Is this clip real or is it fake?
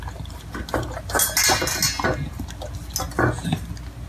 real